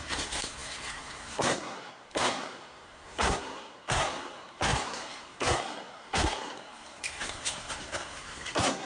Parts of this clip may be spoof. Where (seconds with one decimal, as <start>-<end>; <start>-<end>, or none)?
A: 0.0-8.9